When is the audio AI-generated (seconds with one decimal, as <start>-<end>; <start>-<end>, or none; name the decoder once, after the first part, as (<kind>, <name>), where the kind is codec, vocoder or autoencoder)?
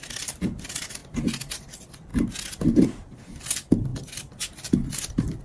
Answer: 0.0-1.0 (vocoder, BigVGAN v2); 1.6-2.1; 3.1-5.4